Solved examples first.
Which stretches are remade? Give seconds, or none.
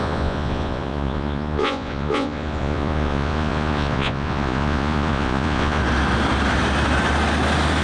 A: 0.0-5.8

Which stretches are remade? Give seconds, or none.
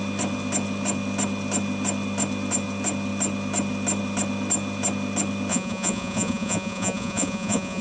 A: 5.5-7.8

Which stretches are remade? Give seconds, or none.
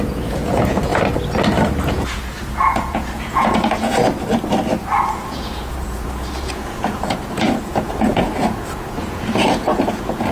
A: 0.0-0.9; 1.9-4.0; 5.1-10.3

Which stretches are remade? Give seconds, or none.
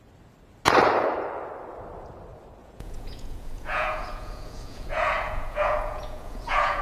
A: 2.6-6.8